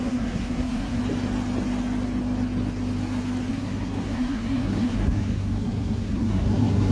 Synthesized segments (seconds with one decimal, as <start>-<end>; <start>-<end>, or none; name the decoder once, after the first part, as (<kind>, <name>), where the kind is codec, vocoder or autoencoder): 0.0-1.0 (codec, SNAC); 3.5-6.9

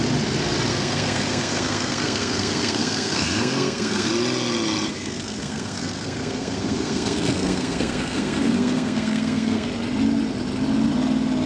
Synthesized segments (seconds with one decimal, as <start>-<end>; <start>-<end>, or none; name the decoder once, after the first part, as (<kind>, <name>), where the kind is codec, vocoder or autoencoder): 0.7-4.1 (codec, SNAC); 4.9-9.7

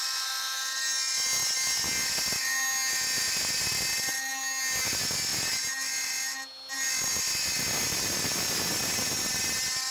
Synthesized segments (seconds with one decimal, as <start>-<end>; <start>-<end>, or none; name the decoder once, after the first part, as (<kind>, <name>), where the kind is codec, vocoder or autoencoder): none

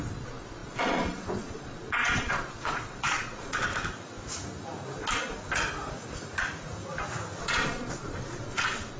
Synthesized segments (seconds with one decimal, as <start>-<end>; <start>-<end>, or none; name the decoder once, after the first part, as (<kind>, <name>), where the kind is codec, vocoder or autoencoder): 0.0-3.7 (vocoder, Vocos); 7.4-9.0